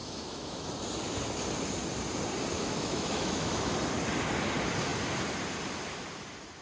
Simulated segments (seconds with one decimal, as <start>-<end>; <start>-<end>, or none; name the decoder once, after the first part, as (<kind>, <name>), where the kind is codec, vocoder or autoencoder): 0.0-0.7 (autoencoder, DAC-VAE); 2.6-3.7